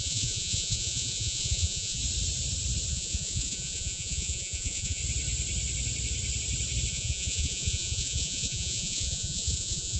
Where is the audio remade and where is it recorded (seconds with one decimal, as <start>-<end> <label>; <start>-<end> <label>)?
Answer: 0.0-2.0 remade; 2.0-2.9 recorded; 2.9-5.0 remade; 5.0-6.9 recorded; 6.9-10.0 remade